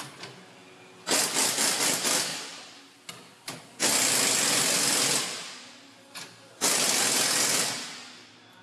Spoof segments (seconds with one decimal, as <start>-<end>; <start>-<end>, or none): none